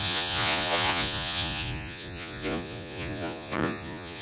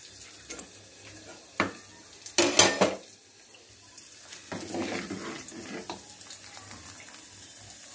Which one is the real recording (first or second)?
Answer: second